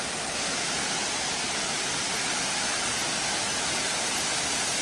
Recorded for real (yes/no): yes